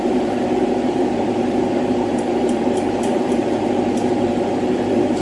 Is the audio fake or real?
fake